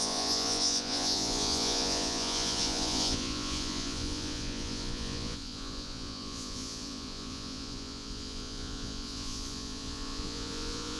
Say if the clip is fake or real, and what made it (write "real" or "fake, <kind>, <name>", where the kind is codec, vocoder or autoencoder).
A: fake, vocoder, Vocos